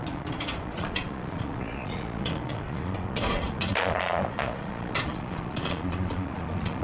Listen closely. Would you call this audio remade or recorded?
remade